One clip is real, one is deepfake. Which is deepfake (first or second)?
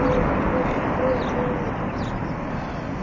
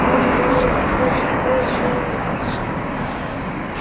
second